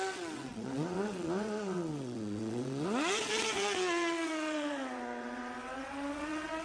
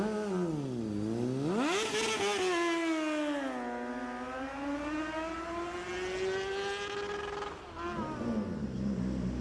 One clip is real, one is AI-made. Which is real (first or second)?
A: second